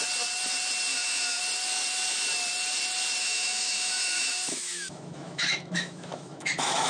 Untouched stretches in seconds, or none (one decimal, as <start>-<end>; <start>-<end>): 0.0-0.9; 1.4-3.2